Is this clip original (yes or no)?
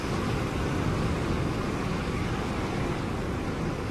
no